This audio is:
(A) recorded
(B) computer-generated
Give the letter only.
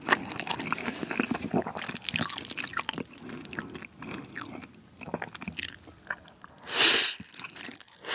A